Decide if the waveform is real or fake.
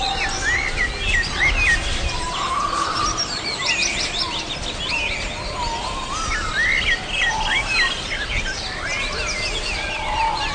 real